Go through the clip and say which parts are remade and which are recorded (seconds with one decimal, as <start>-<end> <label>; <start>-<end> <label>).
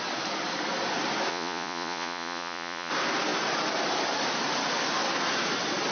0.0-1.3 recorded; 1.3-2.9 remade; 2.9-5.9 recorded